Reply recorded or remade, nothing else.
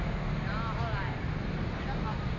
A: recorded